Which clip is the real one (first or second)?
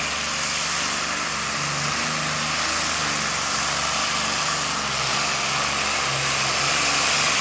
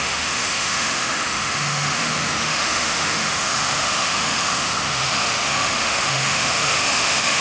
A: first